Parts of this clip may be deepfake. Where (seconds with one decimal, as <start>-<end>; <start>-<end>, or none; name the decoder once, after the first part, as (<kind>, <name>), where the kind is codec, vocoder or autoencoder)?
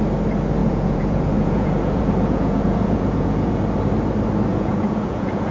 0.6-3.6 (vocoder, Vocos); 4.5-5.5